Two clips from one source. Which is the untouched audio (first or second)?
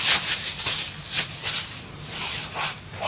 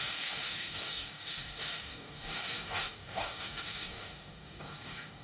first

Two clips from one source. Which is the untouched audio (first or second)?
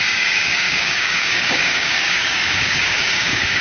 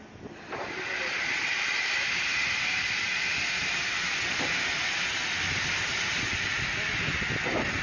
second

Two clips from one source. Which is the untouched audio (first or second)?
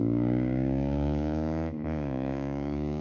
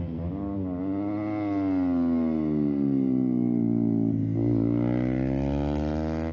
second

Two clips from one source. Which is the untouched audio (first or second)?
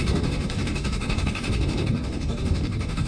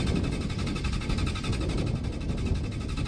second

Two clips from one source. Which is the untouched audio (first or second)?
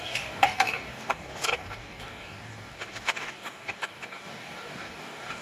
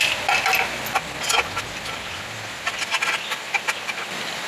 second